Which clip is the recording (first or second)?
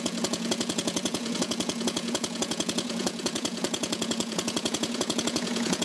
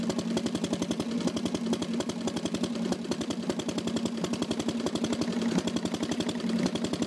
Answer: second